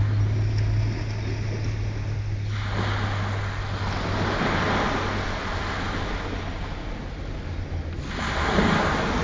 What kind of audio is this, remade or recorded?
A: recorded